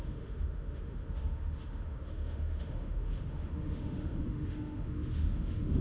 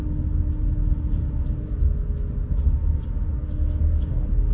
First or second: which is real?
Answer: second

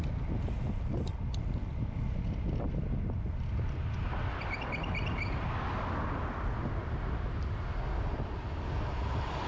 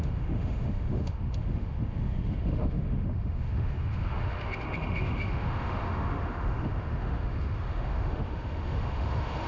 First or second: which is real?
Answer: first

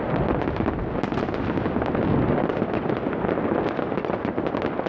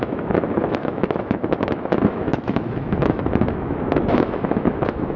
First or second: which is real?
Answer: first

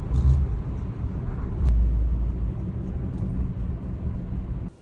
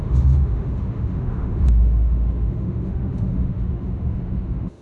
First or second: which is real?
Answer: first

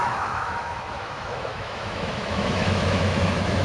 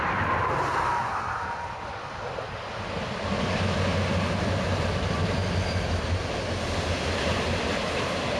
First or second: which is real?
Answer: second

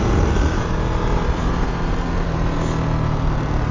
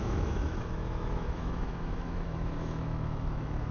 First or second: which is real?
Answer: first